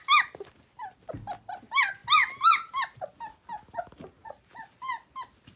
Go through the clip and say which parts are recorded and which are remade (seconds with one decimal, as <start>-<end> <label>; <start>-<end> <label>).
0.0-5.6 recorded